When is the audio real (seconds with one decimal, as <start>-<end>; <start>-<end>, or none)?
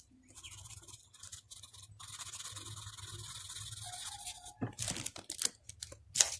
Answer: 0.0-6.4